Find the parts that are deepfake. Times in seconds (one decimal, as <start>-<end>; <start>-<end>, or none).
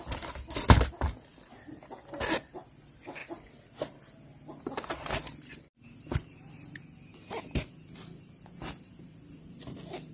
1.3-2.6; 3.2-8.2